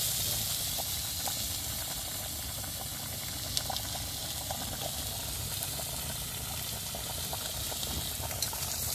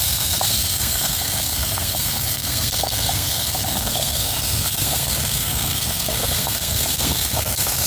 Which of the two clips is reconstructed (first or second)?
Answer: second